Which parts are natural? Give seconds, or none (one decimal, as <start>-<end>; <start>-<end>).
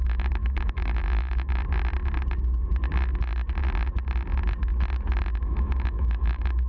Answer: 1.6-5.4